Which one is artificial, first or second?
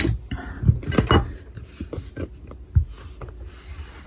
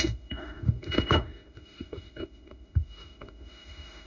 second